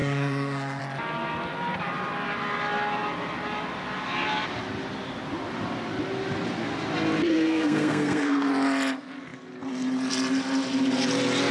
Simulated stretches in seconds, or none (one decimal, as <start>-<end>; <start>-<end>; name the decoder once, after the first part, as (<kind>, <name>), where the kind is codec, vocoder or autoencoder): 0.0-0.8 (codec, SNAC); 7.3-8.5